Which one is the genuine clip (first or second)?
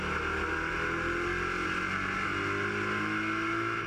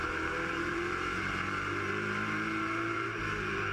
first